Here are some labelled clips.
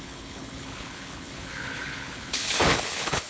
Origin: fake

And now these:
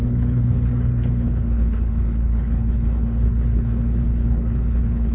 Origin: fake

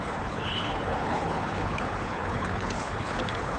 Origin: fake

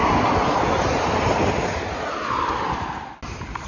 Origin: real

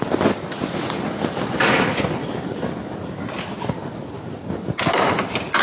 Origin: real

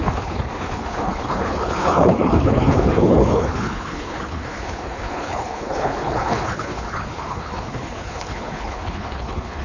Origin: fake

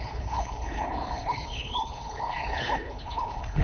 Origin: fake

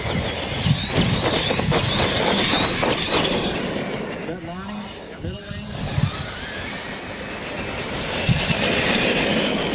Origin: real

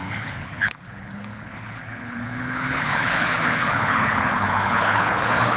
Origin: fake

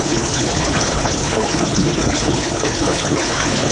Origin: fake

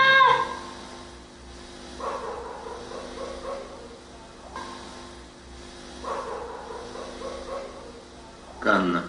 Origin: real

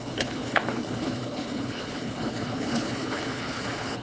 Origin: fake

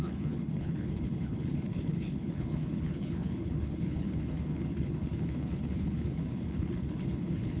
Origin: fake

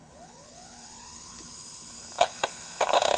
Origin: fake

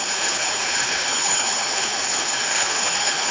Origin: fake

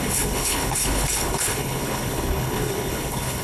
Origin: fake